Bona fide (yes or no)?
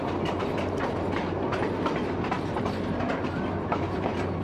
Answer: yes